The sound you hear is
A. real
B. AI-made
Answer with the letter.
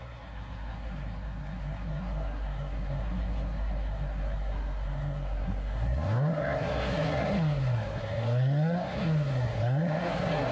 B